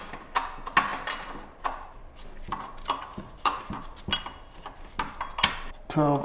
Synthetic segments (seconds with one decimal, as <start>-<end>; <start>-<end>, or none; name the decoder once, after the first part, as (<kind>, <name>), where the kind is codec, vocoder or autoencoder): 3.1-3.6 (vocoder, Vocos)